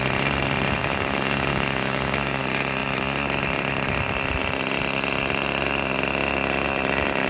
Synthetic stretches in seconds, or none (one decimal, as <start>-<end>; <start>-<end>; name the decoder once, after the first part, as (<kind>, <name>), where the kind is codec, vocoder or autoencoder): 0.8-2.4 (codec, DAC)